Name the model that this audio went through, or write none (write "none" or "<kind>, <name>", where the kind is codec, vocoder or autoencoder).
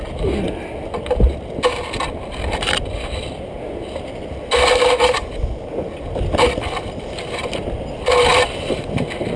none